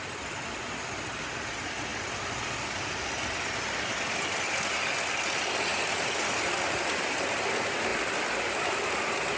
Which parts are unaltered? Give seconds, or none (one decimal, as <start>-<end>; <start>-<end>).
0.0-9.4